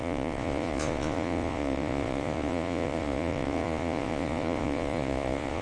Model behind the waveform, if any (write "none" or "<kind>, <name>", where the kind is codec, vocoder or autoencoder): vocoder, Vocos